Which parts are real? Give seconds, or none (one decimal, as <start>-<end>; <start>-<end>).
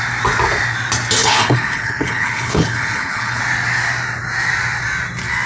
0.0-1.2; 3.4-5.5